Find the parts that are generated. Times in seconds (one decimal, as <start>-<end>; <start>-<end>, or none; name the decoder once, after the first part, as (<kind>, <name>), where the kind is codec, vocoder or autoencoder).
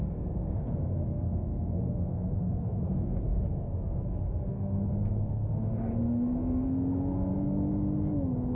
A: 0.0-7.7 (codec, SNAC)